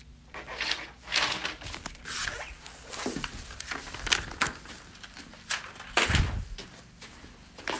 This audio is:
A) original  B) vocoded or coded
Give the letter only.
A